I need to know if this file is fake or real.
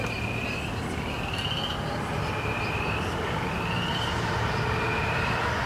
real